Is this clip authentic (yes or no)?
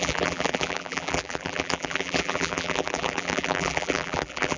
no